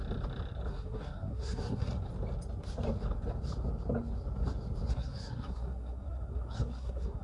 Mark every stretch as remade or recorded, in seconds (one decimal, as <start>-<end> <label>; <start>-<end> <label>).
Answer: 0.0-0.7 recorded; 0.7-1.9 remade; 1.9-4.9 recorded; 4.9-7.2 remade